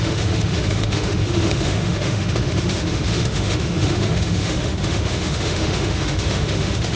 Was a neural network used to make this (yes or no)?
yes